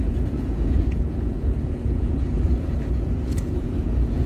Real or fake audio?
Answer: fake